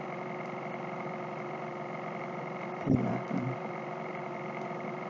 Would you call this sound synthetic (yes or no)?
yes